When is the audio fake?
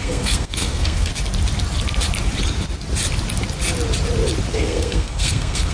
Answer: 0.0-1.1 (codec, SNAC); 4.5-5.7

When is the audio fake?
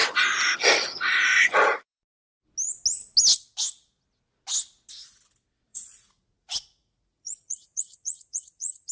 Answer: 5.7-8.9 (vocoder, Vocos)